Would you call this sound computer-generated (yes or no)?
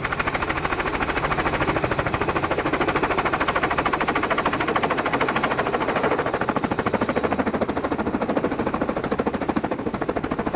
no